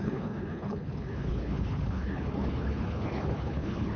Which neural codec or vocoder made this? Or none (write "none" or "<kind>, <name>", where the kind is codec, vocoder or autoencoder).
codec, HILCodec